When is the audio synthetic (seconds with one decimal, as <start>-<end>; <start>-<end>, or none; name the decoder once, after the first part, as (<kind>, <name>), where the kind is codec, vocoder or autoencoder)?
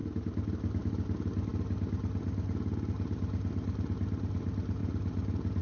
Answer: none